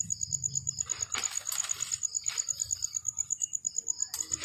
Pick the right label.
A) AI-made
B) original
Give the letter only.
B